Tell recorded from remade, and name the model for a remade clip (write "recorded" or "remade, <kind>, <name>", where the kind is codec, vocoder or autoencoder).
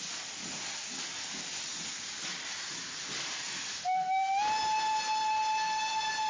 recorded